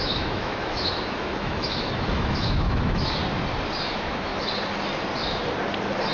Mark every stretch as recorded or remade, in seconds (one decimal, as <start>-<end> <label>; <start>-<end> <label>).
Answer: 0.0-3.2 remade; 3.2-3.9 recorded; 3.9-4.3 remade; 4.3-6.1 recorded